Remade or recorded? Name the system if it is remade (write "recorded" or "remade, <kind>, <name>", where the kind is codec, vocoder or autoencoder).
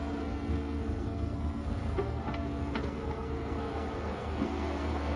remade, codec, SNAC